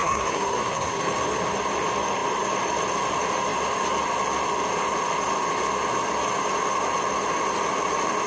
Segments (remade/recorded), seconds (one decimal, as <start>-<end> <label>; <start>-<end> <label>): 0.0-1.0 remade; 1.0-8.3 recorded

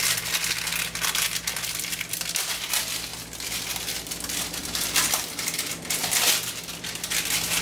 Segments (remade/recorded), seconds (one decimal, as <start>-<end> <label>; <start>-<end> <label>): 0.0-4.6 recorded; 4.6-5.3 remade; 5.3-7.6 recorded

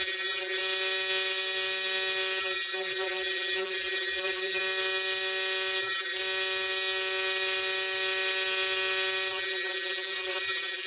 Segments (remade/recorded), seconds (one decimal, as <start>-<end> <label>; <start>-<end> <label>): 0.0-0.6 remade; 0.6-2.4 recorded; 2.4-4.6 remade; 4.6-5.8 recorded; 5.8-6.2 remade; 6.2-9.3 recorded; 9.3-10.9 remade

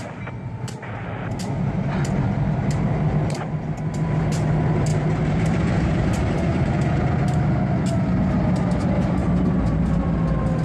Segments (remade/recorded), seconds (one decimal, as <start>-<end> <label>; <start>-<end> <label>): 0.0-4.9 recorded; 4.9-6.7 remade; 6.7-9.2 recorded; 9.2-9.9 remade; 9.9-10.6 recorded

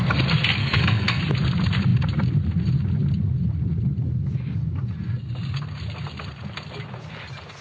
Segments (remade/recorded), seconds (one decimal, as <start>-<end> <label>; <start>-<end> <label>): 0.0-0.6 recorded; 0.6-1.2 remade; 1.2-7.6 recorded

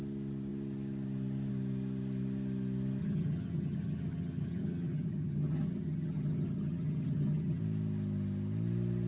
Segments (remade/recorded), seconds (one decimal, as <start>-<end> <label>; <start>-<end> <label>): 0.0-3.0 recorded; 3.0-7.6 remade; 7.6-9.1 recorded